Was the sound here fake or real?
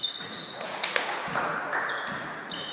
fake